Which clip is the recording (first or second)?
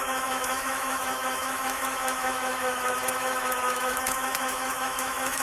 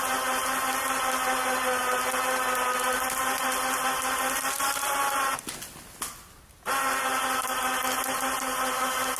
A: second